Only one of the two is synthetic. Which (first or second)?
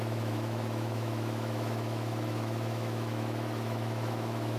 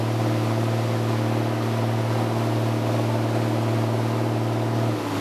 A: first